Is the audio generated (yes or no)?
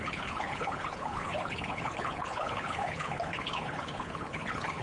yes